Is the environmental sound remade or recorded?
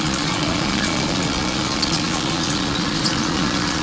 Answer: remade